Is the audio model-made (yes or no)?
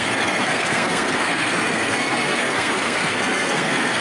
yes